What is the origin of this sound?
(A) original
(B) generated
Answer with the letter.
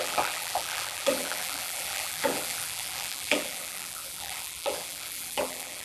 B